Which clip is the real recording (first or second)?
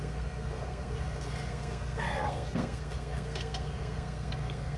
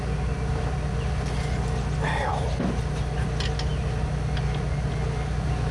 second